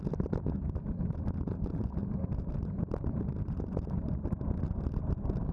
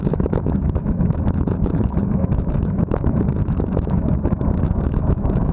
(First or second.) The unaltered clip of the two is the first